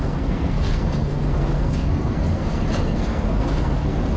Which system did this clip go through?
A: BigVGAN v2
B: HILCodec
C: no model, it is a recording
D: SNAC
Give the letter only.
D